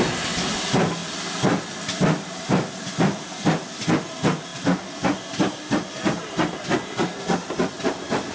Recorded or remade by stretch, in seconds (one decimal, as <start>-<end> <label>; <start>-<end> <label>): 0.0-8.3 recorded